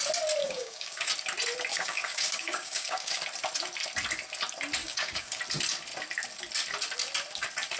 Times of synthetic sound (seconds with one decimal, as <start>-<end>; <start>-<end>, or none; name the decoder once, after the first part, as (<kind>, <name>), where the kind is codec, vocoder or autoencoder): 0.4-1.1 (codec, DAC); 1.7-3.2; 4.8-5.4